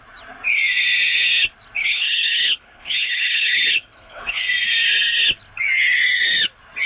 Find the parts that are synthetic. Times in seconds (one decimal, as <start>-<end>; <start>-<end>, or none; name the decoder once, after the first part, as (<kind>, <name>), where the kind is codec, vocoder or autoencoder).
1.8-4.4 (codec, HILCodec)